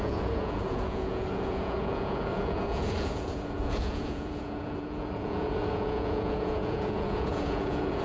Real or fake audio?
fake